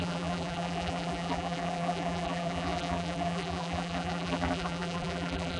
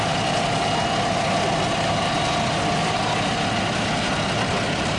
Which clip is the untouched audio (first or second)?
second